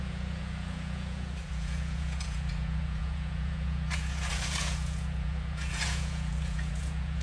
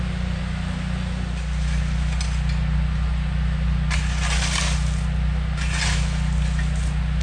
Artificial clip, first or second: first